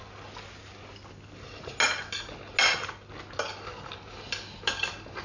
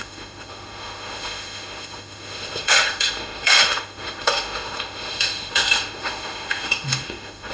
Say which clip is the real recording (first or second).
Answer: first